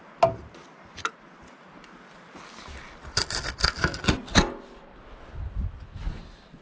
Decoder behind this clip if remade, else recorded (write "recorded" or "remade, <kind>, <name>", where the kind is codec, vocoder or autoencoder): recorded